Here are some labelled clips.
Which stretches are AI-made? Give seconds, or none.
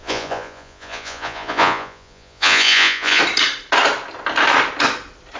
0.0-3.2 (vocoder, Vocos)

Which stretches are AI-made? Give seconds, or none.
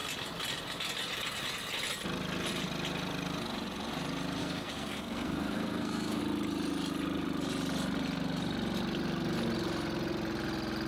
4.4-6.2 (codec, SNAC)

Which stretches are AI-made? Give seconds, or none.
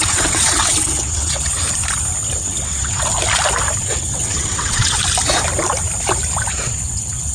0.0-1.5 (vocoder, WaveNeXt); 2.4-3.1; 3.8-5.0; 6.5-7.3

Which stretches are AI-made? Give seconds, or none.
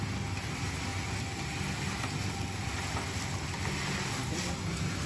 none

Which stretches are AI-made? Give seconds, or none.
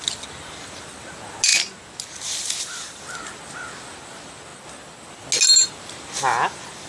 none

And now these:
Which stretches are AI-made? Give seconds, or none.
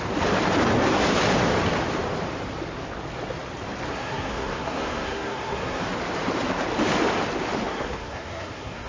3.9-5.8 (codec, SNAC); 7.7-8.9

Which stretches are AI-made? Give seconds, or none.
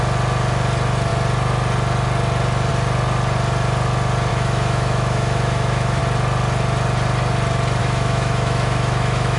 4.3-6.0 (autoencoder, DAC-VAE); 7.8-9.4